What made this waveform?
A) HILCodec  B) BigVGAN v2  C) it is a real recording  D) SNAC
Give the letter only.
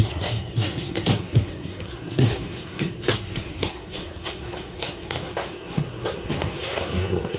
D